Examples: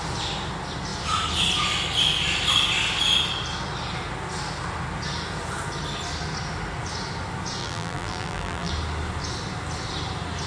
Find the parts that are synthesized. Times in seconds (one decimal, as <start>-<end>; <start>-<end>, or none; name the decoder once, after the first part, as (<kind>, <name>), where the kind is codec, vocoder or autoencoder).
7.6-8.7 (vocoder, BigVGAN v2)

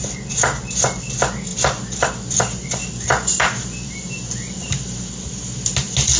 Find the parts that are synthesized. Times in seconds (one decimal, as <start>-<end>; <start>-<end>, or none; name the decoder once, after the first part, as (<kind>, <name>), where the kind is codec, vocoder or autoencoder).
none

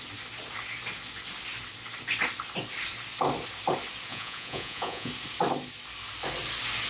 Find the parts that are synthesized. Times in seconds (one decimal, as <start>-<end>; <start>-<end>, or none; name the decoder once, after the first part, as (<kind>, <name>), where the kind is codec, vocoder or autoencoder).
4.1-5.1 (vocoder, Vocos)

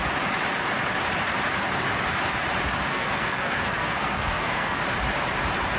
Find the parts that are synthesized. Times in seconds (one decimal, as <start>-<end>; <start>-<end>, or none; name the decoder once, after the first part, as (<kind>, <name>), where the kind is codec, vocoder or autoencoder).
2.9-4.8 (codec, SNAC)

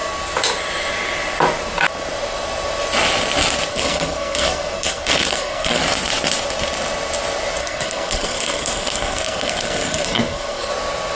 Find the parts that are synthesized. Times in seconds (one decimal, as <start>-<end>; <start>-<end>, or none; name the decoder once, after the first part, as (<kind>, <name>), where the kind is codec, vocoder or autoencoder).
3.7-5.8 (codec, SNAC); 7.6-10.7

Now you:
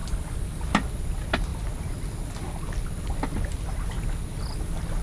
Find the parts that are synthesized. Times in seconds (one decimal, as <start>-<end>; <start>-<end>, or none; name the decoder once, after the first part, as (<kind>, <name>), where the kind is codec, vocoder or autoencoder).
none

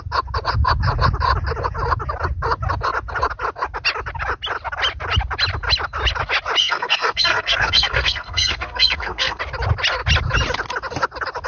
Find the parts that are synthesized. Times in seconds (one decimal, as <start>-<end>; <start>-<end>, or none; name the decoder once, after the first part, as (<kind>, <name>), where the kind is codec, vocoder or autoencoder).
6.6-9.4 (codec, SNAC)

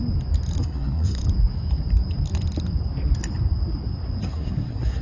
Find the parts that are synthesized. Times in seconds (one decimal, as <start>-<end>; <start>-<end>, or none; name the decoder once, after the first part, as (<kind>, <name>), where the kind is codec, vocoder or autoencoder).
0.6-1.2 (codec, SNAC); 4.2-5.0